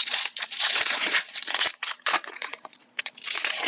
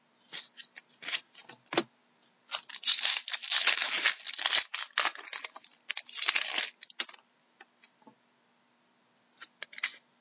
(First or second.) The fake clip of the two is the first